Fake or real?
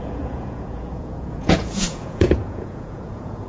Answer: fake